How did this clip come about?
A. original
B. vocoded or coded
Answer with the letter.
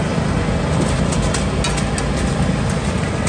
A